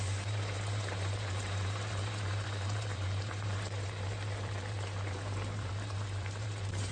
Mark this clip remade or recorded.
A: remade